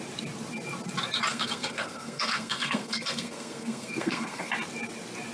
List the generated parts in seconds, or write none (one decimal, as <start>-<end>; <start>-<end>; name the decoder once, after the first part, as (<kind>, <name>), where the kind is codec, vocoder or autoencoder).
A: 1.3-4.5 (codec, SNAC)